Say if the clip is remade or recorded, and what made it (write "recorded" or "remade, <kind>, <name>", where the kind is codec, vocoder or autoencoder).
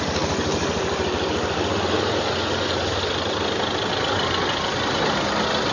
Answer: recorded